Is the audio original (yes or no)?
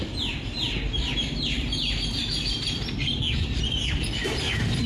yes